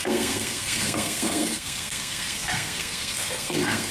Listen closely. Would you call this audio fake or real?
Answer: fake